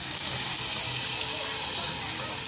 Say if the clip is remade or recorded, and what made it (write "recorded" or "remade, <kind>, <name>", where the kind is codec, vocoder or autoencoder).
recorded